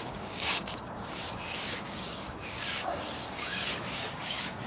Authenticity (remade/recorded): remade